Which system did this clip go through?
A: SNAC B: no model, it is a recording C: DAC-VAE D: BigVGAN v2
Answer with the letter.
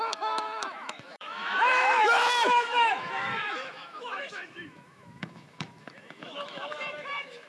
C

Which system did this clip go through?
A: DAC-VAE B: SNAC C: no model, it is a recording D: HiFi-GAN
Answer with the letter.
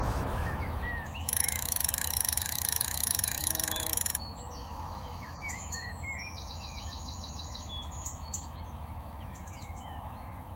A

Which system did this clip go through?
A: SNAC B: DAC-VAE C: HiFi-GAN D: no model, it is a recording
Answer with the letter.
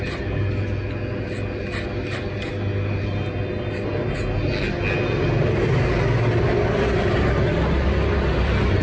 D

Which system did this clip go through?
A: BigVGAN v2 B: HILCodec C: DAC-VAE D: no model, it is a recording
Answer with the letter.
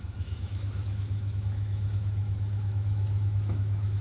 C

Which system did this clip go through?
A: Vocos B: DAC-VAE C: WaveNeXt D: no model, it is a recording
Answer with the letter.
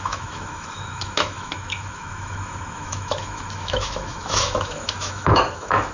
B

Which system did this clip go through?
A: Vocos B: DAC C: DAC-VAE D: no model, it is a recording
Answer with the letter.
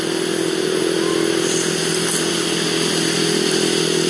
D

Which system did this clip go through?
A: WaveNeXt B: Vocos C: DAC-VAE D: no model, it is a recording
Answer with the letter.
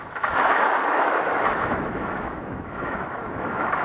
C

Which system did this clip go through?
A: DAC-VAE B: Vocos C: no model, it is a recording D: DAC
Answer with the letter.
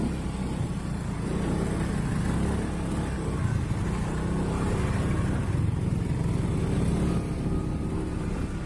C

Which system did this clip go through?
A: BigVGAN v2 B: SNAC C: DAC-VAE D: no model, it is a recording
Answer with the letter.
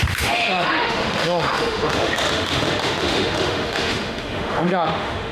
C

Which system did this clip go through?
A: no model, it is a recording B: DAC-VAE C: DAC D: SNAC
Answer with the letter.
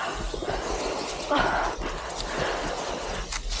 A